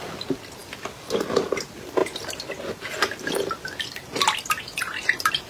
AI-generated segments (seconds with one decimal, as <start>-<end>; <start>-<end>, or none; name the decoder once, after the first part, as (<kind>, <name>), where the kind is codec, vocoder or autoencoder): none